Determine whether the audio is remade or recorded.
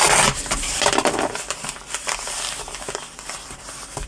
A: remade